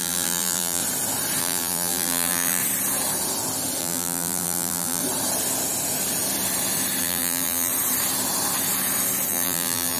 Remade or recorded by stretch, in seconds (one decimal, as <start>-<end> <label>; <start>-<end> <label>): 0.0-0.8 remade; 0.8-1.4 recorded; 1.4-2.6 remade; 2.6-3.8 recorded; 3.8-5.0 remade; 5.0-7.0 recorded; 7.0-7.7 remade; 7.7-9.3 recorded; 9.3-10.0 remade